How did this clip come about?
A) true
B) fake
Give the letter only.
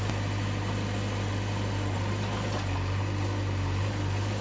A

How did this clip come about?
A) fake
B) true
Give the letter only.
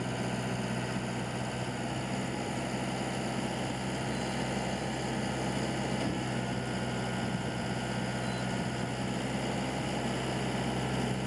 B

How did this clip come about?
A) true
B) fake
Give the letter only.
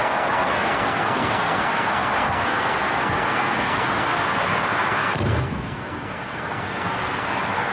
B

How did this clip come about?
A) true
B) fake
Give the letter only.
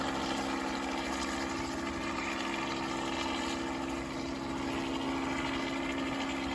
A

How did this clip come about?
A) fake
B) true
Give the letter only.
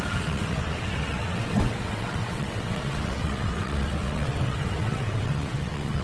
A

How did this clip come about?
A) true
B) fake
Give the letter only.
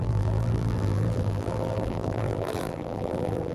B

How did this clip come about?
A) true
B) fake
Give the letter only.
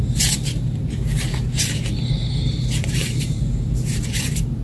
B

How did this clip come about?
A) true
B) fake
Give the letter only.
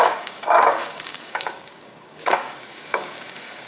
B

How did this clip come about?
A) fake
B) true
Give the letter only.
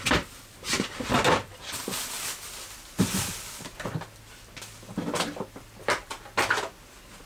B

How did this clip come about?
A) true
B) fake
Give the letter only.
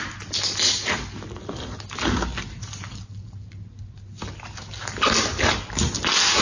A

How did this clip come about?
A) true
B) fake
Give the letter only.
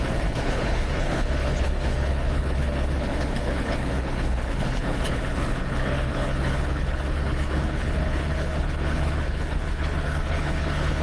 B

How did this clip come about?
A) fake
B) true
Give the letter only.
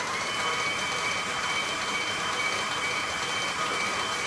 A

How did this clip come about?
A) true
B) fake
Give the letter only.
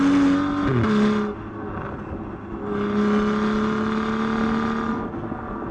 A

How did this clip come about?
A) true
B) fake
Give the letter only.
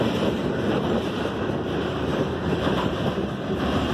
B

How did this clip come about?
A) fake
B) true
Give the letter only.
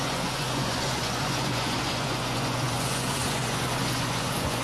A